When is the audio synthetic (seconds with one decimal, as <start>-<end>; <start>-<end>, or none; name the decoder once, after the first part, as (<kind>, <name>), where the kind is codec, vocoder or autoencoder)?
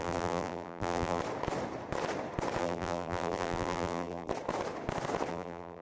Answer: 0.0-1.2 (vocoder, BigVGAN v2); 2.6-4.3; 5.3-5.8